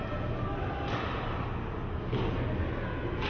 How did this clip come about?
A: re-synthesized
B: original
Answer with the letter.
B